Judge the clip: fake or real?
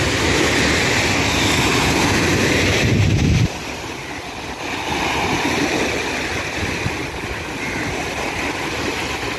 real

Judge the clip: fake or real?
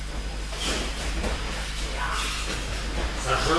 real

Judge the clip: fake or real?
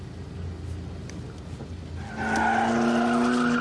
real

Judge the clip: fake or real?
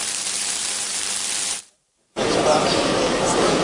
fake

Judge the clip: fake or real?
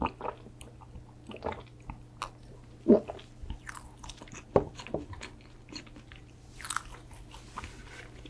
real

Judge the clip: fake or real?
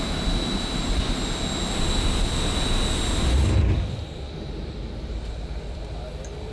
real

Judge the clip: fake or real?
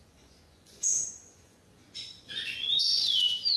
fake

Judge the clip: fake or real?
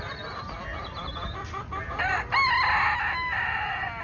real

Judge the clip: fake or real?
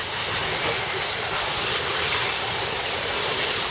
real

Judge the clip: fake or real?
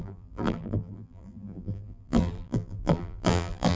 fake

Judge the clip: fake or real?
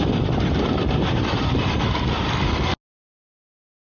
real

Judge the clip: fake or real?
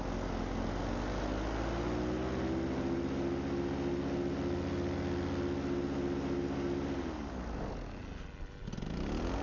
real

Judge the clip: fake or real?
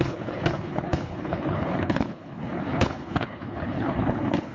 fake